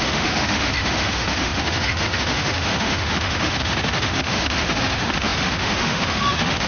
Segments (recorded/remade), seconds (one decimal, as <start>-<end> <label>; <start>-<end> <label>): 0.0-6.7 remade